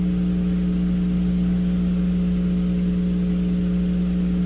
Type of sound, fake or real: real